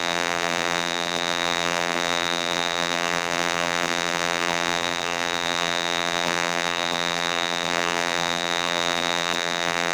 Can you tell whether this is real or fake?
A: fake